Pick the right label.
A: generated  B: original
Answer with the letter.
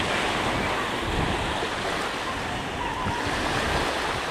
B